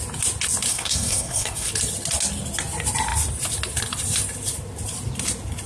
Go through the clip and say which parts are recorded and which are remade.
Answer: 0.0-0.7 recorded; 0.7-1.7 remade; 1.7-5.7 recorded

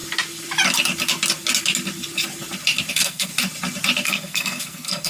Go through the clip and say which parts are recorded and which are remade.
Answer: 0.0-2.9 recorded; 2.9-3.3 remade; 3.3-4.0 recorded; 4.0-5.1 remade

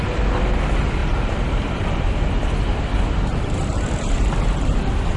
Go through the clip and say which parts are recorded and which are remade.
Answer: 0.0-5.2 recorded